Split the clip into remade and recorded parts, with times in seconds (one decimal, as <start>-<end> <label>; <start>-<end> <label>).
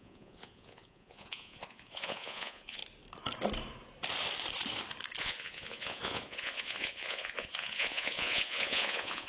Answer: 0.0-2.8 remade; 2.8-5.2 recorded; 5.2-9.3 remade